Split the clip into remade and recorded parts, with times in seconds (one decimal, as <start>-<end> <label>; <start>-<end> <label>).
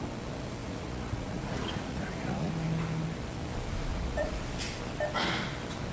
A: 0.0-0.6 recorded; 0.6-2.5 remade; 2.5-3.9 recorded; 3.9-4.4 remade; 4.4-5.9 recorded